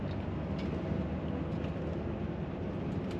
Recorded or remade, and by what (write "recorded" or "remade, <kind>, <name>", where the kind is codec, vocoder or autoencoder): recorded